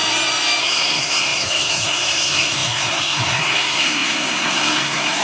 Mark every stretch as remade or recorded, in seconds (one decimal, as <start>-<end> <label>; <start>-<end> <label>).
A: 0.0-0.6 recorded; 0.6-5.2 remade